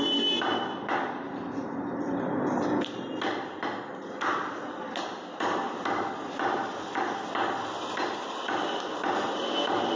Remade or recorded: recorded